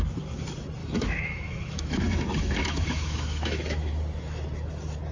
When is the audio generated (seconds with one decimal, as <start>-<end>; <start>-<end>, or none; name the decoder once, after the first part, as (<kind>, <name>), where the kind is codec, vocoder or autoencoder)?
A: 0.8-3.9 (autoencoder, DAC-VAE)